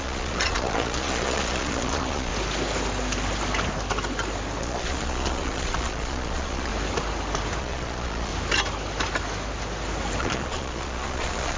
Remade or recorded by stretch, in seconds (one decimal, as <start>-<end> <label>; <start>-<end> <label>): 0.0-2.3 remade; 2.3-4.6 recorded; 4.6-6.7 remade; 6.7-7.6 recorded; 7.6-8.3 remade; 8.3-10.2 recorded; 10.2-11.6 remade